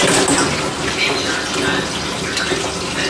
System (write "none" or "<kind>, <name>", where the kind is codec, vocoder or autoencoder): none